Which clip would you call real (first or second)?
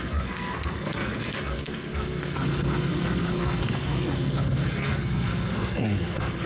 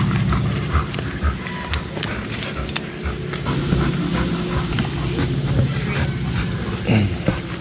second